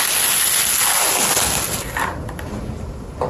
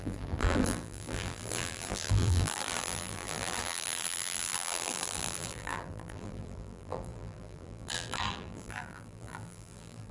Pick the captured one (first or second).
first